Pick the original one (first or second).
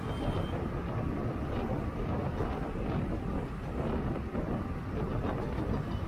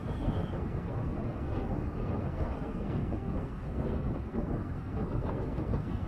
first